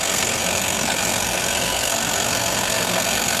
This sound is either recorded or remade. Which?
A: remade